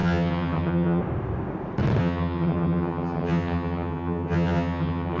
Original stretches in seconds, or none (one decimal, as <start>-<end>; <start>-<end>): 1.0-2.0